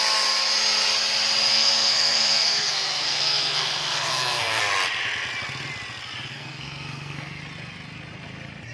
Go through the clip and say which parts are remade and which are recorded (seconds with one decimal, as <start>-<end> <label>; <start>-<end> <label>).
0.0-1.5 recorded; 1.5-4.6 remade; 4.6-6.3 recorded; 6.3-7.4 remade; 7.4-8.7 recorded